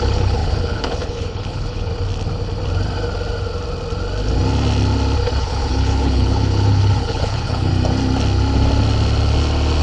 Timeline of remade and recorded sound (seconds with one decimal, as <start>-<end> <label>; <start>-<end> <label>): 0.0-1.9 remade; 1.9-5.4 recorded; 5.4-7.7 remade; 7.7-9.8 recorded